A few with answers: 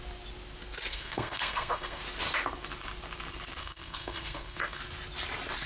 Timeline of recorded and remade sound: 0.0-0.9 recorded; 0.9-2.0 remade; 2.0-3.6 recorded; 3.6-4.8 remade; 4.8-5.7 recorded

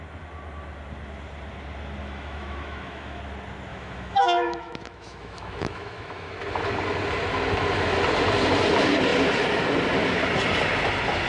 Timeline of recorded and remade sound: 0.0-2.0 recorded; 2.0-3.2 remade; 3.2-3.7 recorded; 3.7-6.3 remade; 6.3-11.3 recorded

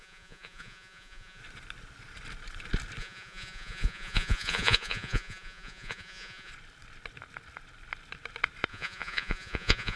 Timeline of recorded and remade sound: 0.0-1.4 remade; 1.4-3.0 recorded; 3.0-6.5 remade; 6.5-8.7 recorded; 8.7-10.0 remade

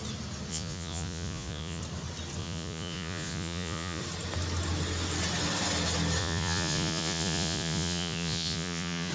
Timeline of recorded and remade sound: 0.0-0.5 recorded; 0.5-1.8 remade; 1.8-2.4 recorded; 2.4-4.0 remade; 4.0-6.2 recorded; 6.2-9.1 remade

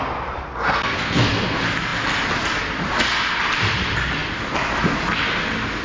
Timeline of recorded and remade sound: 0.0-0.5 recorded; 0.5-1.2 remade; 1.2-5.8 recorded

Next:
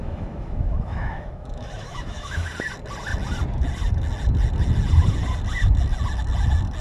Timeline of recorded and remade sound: 0.0-2.5 remade; 2.5-6.8 recorded

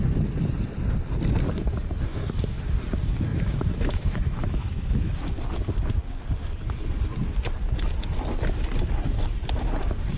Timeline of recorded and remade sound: 0.0-3.3 recorded; 3.3-5.3 remade; 5.3-10.2 recorded

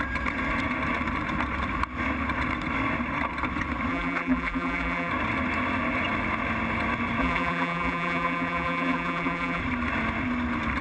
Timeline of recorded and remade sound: 0.0-3.9 recorded; 3.9-5.1 remade; 5.1-7.2 recorded; 7.2-9.6 remade; 9.6-10.8 recorded